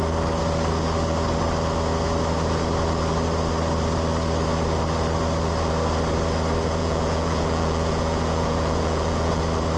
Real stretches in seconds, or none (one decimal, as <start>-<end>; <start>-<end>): 0.0-6.8; 9.4-9.8